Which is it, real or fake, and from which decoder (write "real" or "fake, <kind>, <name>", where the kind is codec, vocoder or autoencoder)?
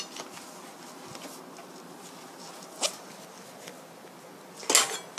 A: real